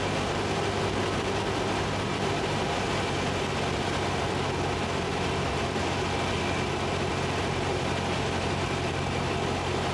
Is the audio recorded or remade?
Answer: recorded